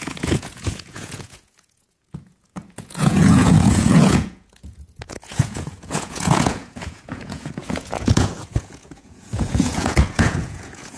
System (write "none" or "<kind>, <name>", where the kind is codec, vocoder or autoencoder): vocoder, Vocos